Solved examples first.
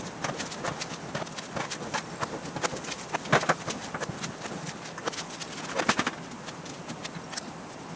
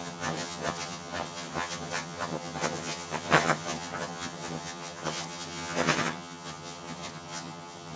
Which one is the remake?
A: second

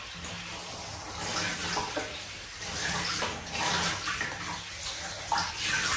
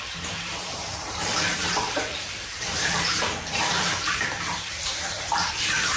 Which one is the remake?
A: second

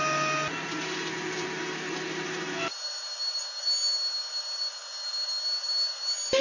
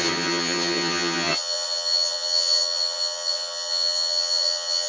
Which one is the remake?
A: second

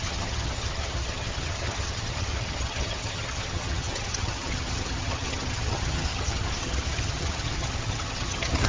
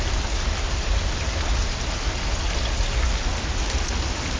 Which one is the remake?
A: first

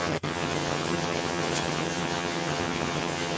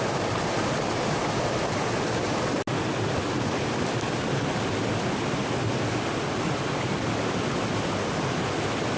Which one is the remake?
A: first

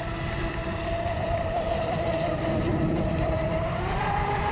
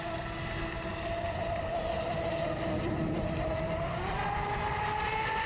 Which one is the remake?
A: first